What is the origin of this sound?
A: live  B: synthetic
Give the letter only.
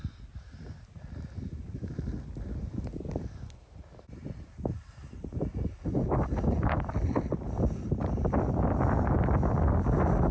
A